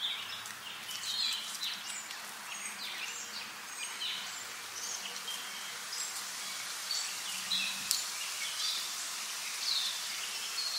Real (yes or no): yes